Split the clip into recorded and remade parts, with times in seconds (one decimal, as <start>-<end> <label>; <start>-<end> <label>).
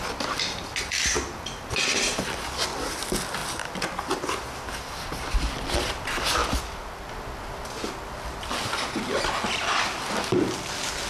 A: 0.0-11.1 recorded